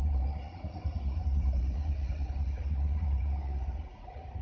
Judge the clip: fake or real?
fake